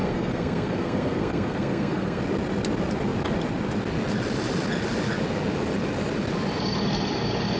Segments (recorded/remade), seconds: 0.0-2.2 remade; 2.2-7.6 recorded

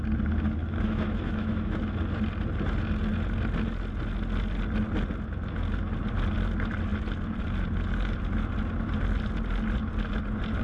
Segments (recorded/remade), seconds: 0.0-0.6 recorded; 0.6-1.8 remade; 1.8-10.6 recorded

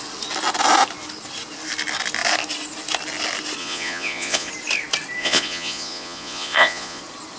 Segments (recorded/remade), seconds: 0.0-3.6 recorded; 3.6-4.5 remade; 4.5-5.2 recorded; 5.2-7.0 remade; 7.0-7.4 recorded

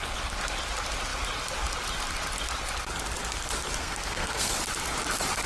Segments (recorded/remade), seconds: 0.0-3.8 recorded; 3.8-4.5 remade; 4.5-5.5 recorded

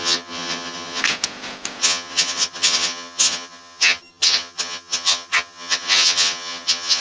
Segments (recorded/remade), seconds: 0.0-1.0 remade; 1.0-1.8 recorded; 1.8-7.0 remade

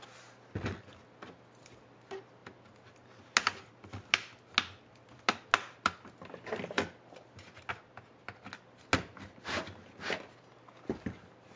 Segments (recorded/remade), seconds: 0.0-11.6 recorded

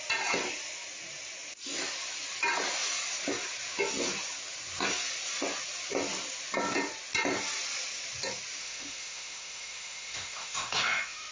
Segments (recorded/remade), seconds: 0.0-8.6 recorded; 8.6-11.3 remade

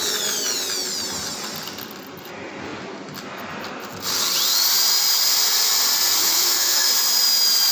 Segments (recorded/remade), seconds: 0.0-6.2 recorded; 6.2-6.9 remade; 6.9-7.7 recorded